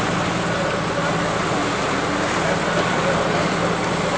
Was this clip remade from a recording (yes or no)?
no